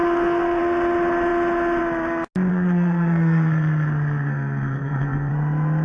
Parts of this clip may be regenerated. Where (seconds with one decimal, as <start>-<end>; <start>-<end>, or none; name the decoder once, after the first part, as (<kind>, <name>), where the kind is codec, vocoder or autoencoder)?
0.0-0.6 (codec, SNAC); 2.5-5.3

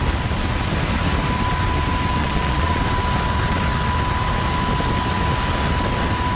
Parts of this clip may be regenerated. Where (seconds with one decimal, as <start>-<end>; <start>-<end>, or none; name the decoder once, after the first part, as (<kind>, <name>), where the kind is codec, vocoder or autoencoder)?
2.2-2.8 (vocoder, Vocos)

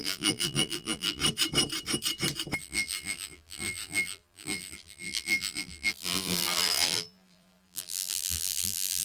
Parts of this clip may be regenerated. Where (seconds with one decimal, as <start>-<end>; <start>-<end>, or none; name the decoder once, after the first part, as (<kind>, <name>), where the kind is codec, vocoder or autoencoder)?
0.0-1.2 (vocoder, BigVGAN v2); 2.6-9.0

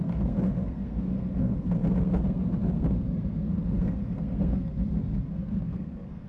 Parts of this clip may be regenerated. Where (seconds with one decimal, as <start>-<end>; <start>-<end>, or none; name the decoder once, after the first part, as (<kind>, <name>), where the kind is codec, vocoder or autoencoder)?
0.0-6.3 (codec, SNAC)

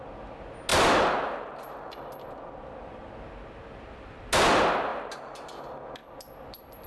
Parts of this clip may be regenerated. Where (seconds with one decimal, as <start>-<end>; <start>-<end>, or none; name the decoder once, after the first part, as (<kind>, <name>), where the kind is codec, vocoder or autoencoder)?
0.7-3.0 (vocoder, BigVGAN v2); 4.9-5.5; 6.0-6.9

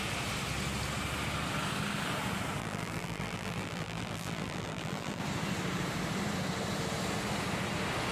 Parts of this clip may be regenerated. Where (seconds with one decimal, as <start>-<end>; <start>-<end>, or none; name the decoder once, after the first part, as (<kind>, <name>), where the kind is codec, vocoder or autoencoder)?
2.6-5.2 (vocoder, BigVGAN v2)